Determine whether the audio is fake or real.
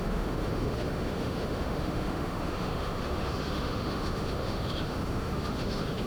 fake